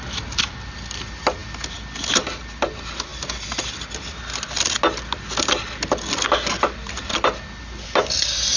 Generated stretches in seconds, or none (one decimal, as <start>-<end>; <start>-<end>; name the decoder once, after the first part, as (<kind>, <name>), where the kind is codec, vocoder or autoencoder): none